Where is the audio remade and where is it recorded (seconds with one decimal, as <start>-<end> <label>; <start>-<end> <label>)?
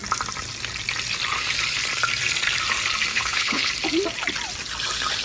0.0-3.1 recorded; 3.1-3.7 remade; 3.7-5.2 recorded